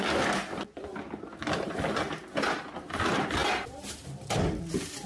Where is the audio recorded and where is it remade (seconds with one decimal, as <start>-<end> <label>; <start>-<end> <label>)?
0.0-3.4 recorded; 3.4-4.3 remade; 4.3-5.1 recorded